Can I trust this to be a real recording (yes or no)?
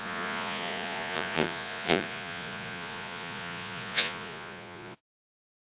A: no